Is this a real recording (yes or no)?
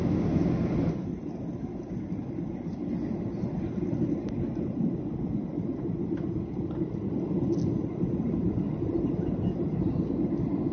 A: yes